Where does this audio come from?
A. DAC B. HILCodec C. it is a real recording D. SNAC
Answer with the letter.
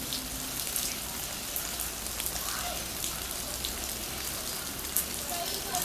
C